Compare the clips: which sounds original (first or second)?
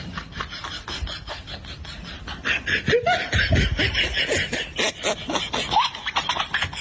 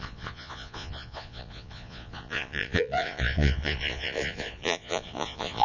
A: first